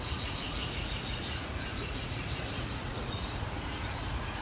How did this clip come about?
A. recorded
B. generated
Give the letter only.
B